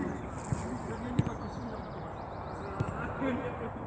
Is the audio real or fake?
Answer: real